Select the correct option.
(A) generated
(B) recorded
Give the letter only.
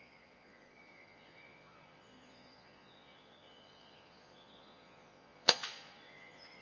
A